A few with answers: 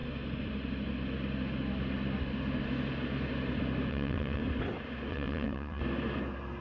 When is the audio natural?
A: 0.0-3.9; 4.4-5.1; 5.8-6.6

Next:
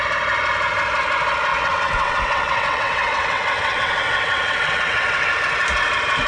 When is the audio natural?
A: 0.0-1.5; 5.3-6.3

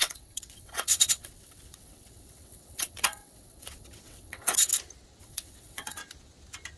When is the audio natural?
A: 4.7-5.2; 6.0-6.8

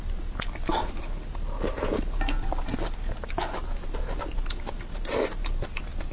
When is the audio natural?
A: 0.0-6.1

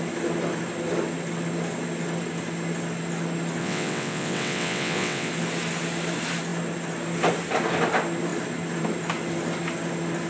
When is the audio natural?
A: 0.0-3.6; 5.3-10.3

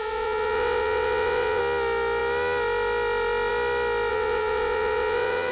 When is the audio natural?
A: 1.6-4.1